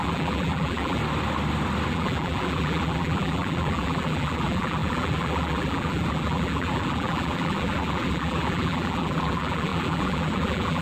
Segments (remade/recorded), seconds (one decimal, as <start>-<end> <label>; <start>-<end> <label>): 0.0-1.0 remade; 1.0-1.9 recorded; 1.9-10.8 remade